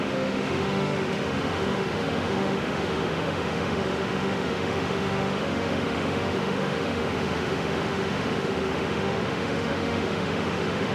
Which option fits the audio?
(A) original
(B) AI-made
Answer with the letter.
B